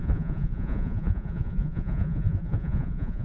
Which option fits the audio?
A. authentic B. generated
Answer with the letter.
B